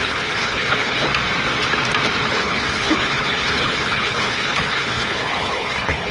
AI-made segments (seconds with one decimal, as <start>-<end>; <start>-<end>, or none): 0.0-1.1; 2.3-6.1